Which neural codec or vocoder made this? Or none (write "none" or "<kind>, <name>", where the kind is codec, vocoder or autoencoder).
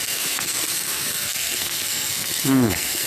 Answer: codec, SNAC